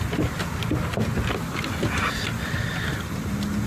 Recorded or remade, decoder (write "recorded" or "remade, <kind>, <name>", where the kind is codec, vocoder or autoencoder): recorded